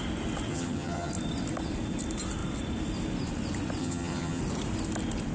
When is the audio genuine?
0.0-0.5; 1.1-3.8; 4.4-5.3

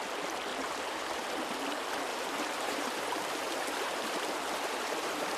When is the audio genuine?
0.0-0.5; 1.3-2.1